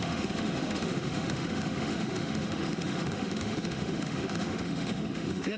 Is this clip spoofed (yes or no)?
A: yes